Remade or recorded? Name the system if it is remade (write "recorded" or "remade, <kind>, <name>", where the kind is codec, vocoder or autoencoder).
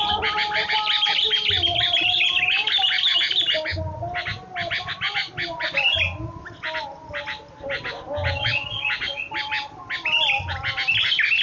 recorded